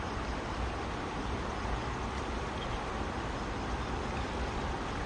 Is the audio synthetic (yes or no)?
no